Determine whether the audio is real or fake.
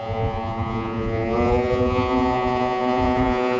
fake